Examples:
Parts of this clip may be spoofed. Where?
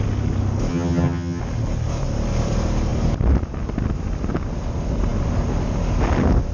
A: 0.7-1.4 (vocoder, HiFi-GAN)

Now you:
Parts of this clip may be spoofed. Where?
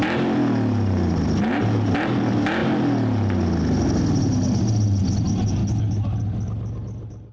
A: none